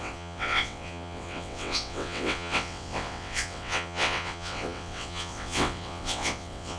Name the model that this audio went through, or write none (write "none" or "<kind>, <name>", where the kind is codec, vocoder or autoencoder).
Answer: vocoder, WaveNeXt